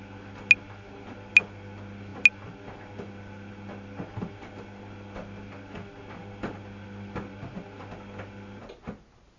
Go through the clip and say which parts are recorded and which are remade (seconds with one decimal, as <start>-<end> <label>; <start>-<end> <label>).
0.0-9.4 recorded